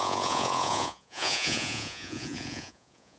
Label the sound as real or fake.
fake